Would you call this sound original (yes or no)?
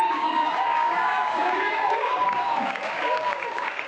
no